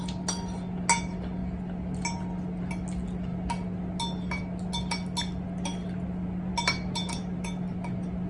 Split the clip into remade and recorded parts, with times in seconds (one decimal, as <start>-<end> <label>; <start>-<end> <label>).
0.0-8.3 recorded